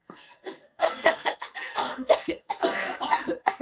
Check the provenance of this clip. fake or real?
fake